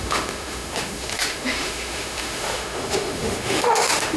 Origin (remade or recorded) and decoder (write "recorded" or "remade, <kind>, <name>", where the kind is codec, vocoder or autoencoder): remade, autoencoder, DAC-VAE